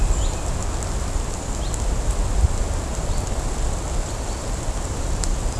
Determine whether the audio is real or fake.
real